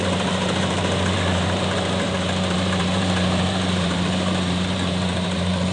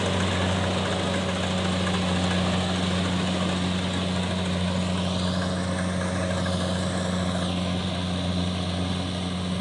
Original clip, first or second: second